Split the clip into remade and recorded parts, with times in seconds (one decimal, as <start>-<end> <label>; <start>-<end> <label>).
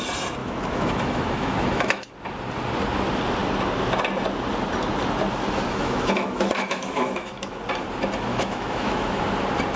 0.0-0.4 recorded; 0.4-2.1 remade; 2.1-5.7 recorded; 5.7-7.6 remade; 7.6-8.3 recorded; 8.3-9.2 remade; 9.2-9.8 recorded